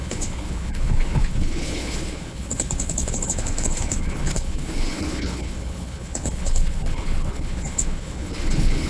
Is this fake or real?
fake